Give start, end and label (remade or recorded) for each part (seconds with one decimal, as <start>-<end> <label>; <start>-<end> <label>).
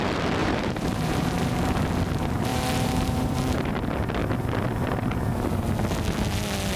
0.0-0.4 recorded; 0.4-1.8 remade; 1.8-2.5 recorded; 2.5-3.7 remade; 3.7-6.8 recorded